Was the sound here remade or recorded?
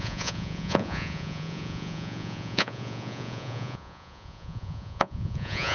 remade